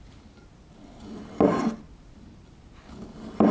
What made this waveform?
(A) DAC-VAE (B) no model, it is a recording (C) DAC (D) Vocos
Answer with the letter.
B